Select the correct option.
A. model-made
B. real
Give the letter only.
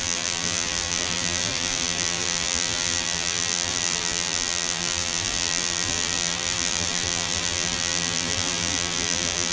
A